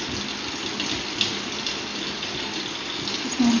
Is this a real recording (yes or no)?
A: yes